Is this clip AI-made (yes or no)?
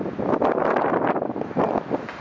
no